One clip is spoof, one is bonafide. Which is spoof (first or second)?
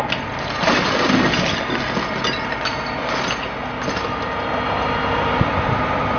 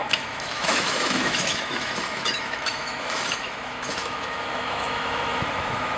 second